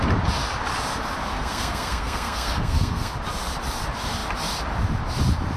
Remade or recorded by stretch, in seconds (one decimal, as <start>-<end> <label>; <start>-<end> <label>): 0.0-1.4 recorded; 1.4-3.1 remade; 3.1-5.6 recorded